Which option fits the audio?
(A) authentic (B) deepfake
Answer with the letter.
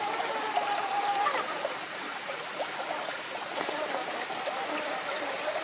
A